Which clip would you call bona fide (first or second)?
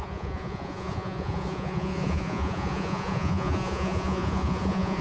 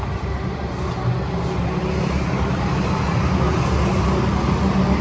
second